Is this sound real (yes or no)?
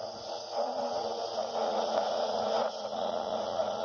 no